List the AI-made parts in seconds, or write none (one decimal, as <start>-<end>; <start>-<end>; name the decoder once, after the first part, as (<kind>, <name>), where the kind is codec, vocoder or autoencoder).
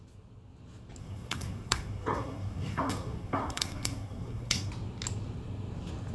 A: 1.0-4.7 (codec, SNAC)